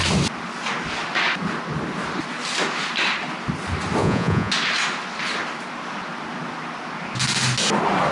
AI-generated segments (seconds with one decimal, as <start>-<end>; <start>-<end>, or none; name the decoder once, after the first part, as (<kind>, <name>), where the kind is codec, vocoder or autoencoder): 4.0-4.5 (vocoder, Vocos)